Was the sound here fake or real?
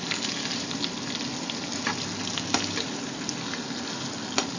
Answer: real